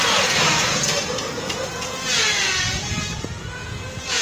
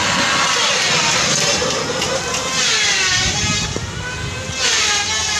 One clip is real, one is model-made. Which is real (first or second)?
second